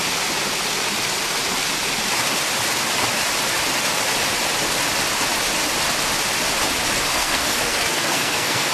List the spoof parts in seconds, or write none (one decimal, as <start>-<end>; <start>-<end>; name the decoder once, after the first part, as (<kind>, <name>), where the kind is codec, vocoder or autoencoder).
7.1-8.7 (codec, SNAC)